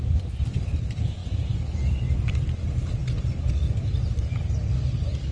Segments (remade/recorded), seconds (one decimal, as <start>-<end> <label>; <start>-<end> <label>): 0.0-1.2 recorded; 1.2-2.5 remade; 2.5-5.3 recorded